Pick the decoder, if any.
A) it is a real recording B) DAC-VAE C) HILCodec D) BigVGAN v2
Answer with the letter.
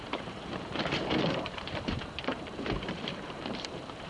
D